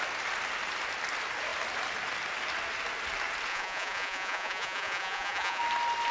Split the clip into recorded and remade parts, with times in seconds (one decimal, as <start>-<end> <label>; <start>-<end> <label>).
0.0-3.5 recorded; 3.5-5.6 remade; 5.6-6.1 recorded